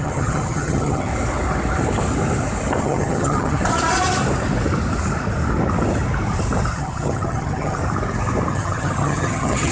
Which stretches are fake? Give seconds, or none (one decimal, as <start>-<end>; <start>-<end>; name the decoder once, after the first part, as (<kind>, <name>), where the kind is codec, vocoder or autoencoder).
0.0-1.1 (vocoder, HiFi-GAN); 2.8-3.6; 6.7-7.8; 8.5-9.7